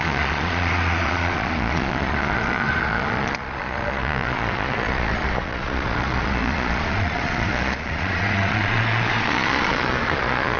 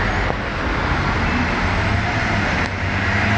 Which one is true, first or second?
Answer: second